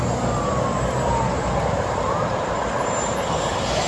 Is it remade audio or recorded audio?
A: remade